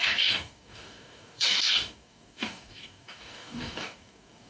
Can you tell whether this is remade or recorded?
remade